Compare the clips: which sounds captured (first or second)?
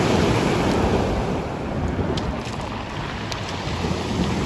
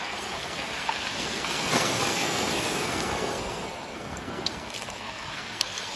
first